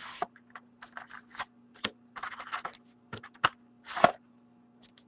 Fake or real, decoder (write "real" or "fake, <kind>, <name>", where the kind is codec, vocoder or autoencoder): real